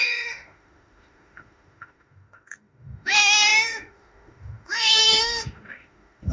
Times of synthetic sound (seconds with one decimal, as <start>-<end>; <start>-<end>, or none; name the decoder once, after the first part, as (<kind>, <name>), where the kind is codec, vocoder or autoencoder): 0.0-6.3 (autoencoder, DAC-VAE)